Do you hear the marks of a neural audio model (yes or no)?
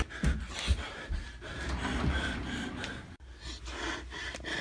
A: no